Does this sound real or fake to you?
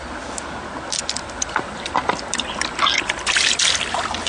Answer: real